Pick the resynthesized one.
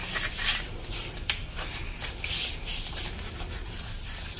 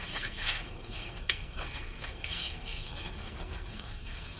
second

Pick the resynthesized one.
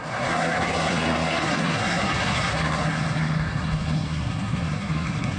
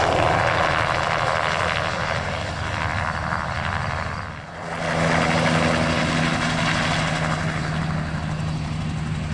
first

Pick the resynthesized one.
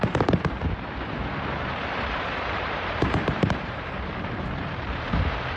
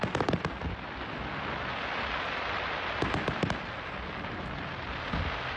first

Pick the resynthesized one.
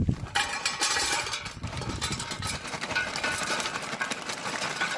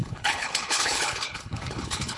second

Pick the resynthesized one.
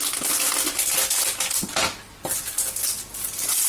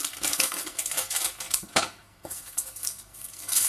second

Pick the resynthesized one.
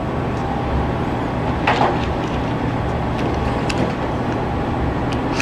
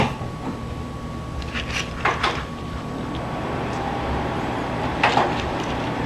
second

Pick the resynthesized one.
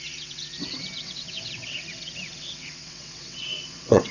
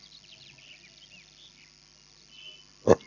first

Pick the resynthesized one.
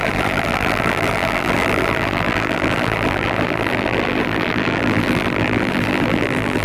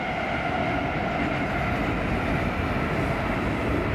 first